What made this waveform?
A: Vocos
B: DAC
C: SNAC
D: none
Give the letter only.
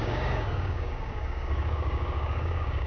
B